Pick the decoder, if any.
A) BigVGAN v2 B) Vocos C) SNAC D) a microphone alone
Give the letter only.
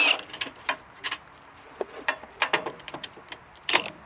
A